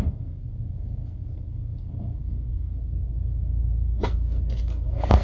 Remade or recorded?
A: remade